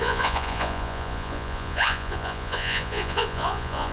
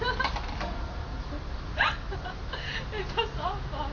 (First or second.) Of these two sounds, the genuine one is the second